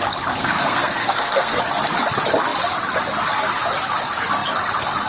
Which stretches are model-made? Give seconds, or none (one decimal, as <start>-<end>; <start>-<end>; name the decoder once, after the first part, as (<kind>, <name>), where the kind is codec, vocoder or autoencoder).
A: 0.4-1.6 (codec, SNAC)